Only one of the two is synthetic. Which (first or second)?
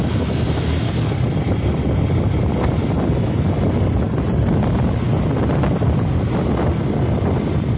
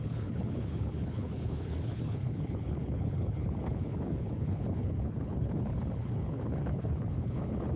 second